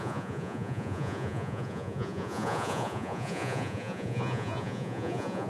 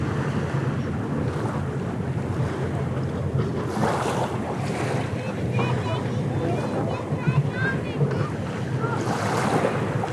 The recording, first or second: second